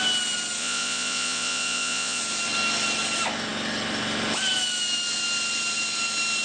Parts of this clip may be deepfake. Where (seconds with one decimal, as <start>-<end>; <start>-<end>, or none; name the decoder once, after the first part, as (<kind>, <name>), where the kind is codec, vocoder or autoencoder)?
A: 0.6-2.2 (vocoder, Vocos)